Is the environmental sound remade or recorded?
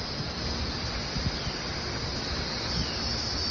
recorded